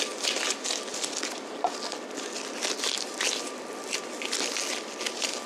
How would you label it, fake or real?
real